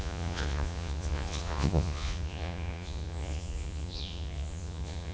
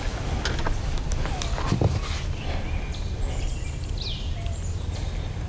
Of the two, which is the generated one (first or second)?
first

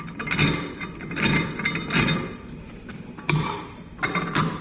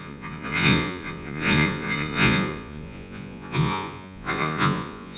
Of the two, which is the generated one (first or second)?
second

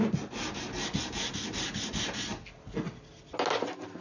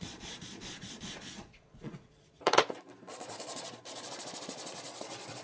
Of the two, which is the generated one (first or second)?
second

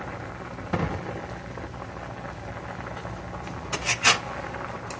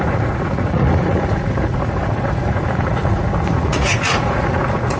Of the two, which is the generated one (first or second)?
second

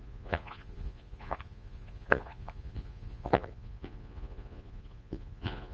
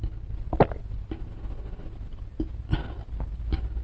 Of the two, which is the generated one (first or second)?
first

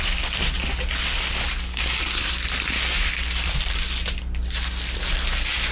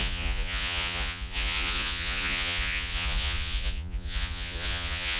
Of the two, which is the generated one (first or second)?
second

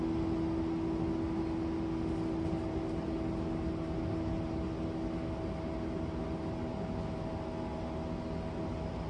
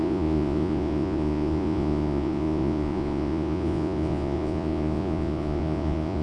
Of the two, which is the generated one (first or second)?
second